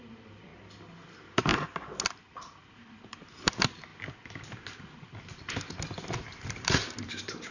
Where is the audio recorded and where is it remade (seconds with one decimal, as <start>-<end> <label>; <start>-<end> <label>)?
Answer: 0.0-0.5 remade; 0.5-1.1 recorded; 1.1-1.5 remade; 1.5-2.1 recorded; 2.1-3.9 remade; 3.9-6.5 recorded; 6.5-7.5 remade